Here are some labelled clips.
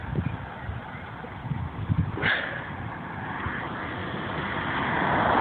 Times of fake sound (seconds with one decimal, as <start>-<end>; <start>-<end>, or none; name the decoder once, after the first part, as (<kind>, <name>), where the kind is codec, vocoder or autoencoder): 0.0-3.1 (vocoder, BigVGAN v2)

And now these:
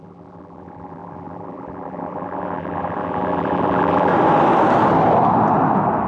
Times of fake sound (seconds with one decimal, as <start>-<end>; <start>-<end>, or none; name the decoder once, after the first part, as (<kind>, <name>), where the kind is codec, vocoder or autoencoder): 0.0-4.1 (vocoder, BigVGAN v2)

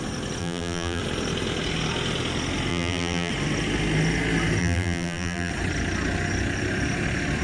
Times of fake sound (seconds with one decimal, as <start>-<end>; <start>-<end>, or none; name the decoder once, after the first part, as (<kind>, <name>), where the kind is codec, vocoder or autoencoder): 0.4-1.0 (vocoder, BigVGAN v2); 2.7-3.3; 4.6-5.5